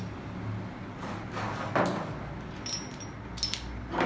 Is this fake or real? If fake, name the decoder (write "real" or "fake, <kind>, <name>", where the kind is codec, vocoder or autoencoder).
real